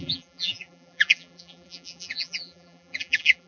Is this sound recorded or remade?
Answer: remade